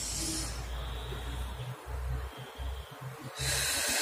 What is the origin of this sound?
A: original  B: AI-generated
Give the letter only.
A